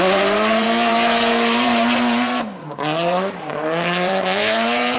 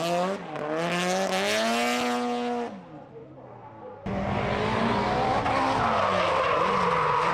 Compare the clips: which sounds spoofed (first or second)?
first